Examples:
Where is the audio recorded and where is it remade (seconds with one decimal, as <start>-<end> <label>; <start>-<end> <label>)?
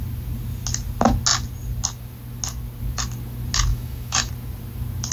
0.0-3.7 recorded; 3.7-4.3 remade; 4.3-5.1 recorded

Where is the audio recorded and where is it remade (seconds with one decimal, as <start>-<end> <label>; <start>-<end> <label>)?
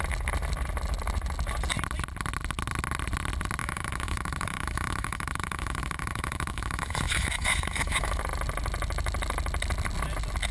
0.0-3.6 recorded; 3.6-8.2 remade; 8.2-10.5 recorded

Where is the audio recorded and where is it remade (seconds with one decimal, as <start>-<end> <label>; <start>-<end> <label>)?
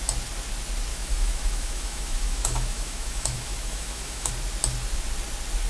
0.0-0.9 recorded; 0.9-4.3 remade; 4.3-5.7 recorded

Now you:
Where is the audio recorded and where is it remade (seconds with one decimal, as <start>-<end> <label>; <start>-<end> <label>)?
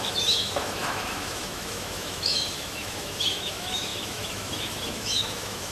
0.0-5.7 remade